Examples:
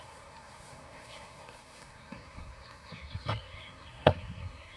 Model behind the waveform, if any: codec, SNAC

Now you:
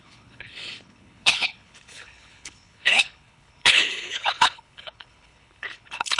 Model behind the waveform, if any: codec, HILCodec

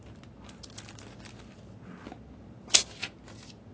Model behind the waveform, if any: none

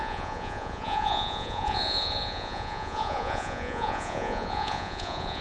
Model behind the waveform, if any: vocoder, Vocos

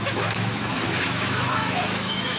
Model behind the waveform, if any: autoencoder, DAC-VAE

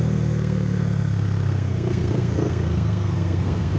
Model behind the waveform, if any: codec, SNAC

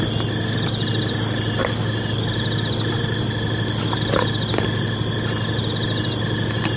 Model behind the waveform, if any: none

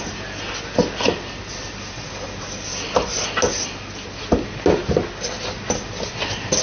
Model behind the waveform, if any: none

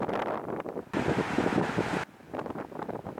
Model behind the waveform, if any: none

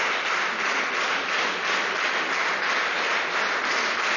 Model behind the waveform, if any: vocoder, BigVGAN v2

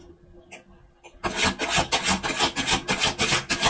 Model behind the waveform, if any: none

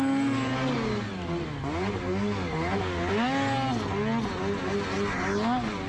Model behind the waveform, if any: none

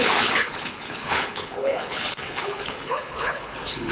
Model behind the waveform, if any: codec, HILCodec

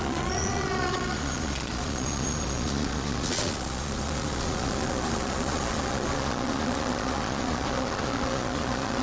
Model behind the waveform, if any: vocoder, Vocos